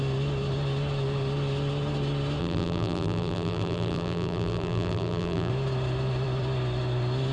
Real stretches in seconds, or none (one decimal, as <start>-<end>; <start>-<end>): 0.0-2.4; 5.5-7.3